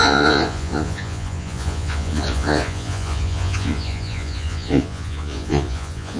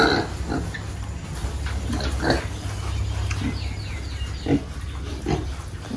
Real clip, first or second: second